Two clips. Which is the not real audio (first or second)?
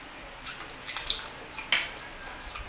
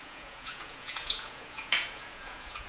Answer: second